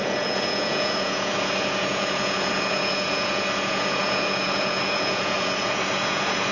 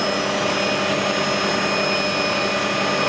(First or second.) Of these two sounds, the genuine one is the second